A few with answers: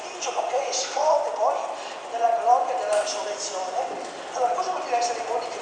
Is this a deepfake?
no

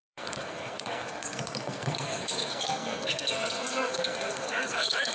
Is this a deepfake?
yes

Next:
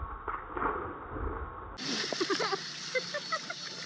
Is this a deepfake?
no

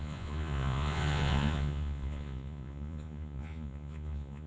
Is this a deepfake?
yes